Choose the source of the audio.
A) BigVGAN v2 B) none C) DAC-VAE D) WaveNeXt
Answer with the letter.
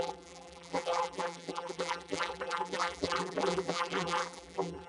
A